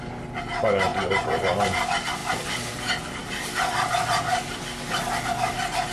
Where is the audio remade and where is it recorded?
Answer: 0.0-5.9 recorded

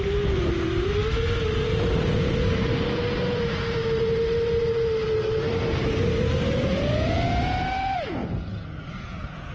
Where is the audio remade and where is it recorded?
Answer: 0.0-8.2 recorded; 8.2-9.5 remade

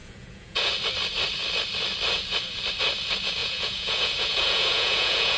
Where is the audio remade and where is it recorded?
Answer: 0.0-0.7 remade; 0.7-3.4 recorded; 3.4-5.4 remade

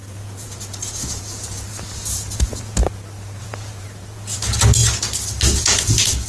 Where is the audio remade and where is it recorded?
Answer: 0.0-2.8 remade; 2.8-3.4 recorded; 3.4-4.8 remade; 4.8-5.6 recorded; 5.6-6.3 remade

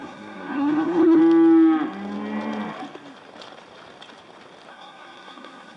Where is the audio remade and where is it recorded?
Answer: 0.0-1.2 remade; 1.2-4.7 recorded; 4.7-5.8 remade

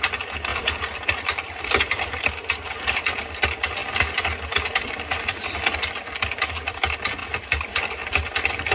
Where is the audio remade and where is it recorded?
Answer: 0.0-0.5 recorded; 0.5-2.0 remade; 2.0-7.2 recorded; 7.2-8.7 remade

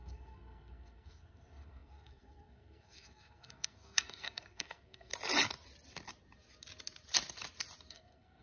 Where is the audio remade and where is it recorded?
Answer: 0.0-5.1 remade; 5.1-7.9 recorded; 7.9-8.4 remade